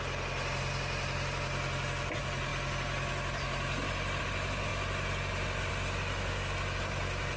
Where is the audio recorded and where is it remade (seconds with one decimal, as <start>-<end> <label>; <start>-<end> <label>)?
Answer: 0.0-7.4 recorded